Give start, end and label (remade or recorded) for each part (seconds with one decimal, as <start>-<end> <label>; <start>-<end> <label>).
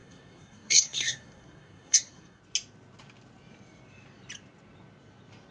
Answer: 0.0-2.4 remade; 2.4-5.5 recorded